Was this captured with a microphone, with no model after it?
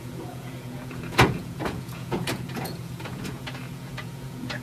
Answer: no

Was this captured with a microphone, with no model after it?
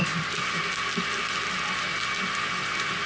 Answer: yes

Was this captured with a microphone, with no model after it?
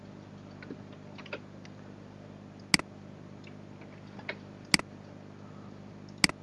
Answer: yes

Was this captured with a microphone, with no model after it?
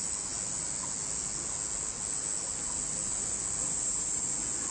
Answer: yes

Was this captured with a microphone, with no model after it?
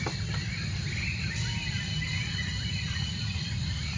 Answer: yes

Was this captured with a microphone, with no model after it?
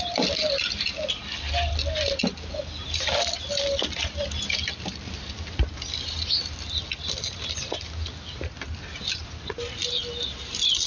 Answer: yes